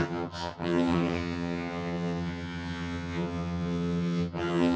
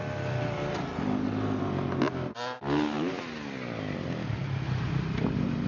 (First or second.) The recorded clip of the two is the second